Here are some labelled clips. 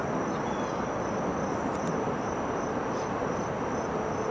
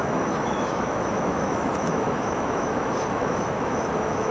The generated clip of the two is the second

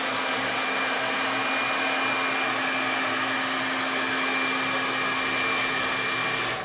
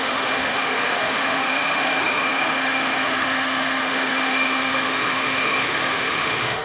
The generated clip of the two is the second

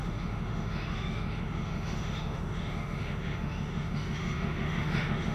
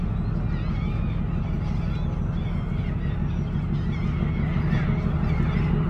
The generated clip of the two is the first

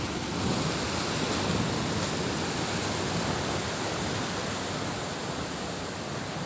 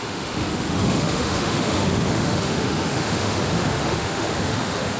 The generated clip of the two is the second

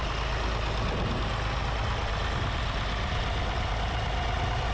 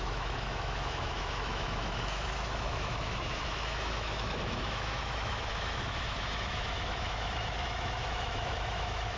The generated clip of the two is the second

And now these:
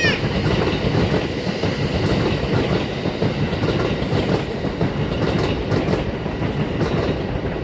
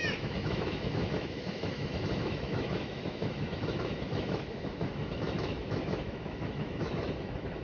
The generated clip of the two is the second